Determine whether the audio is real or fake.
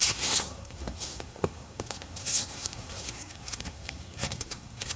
fake